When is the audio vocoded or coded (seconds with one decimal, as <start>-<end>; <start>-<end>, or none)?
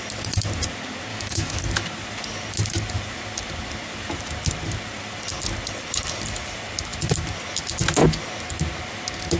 1.1-1.6